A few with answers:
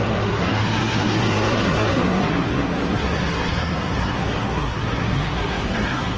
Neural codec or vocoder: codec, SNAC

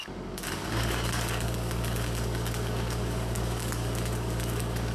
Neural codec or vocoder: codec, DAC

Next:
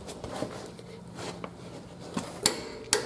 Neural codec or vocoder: none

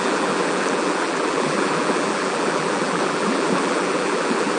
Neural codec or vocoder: vocoder, BigVGAN v2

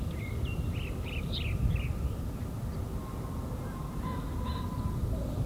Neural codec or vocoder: none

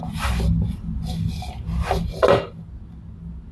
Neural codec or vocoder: none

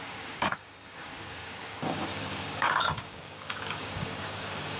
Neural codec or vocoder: codec, DAC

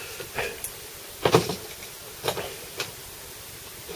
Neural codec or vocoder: vocoder, BigVGAN v2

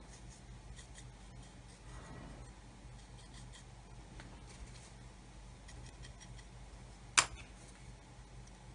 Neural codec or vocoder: none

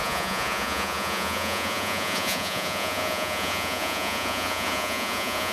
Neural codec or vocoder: vocoder, Vocos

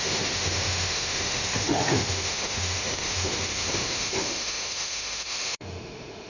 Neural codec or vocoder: autoencoder, DAC-VAE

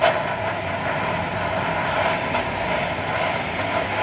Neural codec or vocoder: none